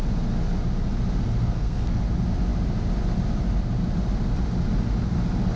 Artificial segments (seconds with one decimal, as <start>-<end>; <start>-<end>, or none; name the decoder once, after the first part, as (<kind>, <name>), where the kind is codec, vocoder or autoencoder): 1.4-2.0 (codec, SNAC)